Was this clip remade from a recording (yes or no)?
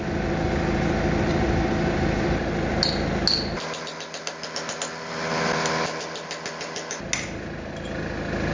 no